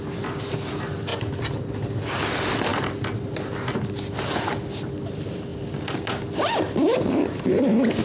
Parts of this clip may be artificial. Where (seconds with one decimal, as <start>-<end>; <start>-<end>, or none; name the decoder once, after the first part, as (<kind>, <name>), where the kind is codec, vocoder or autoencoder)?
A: 2.7-3.7 (vocoder, BigVGAN v2); 5.5-6.0; 6.9-8.0